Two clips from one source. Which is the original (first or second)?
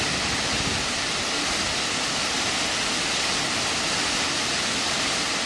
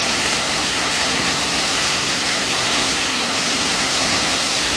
first